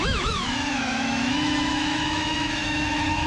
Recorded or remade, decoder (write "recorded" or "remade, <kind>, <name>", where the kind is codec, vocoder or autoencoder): remade, autoencoder, DAC-VAE